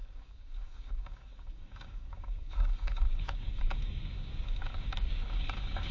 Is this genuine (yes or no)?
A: no